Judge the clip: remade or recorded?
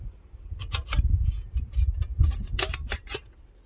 recorded